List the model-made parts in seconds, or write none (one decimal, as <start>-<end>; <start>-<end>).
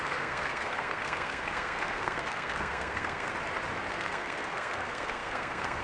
0.0-3.3; 3.9-5.8